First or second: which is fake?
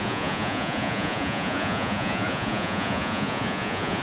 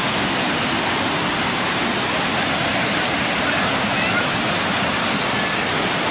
first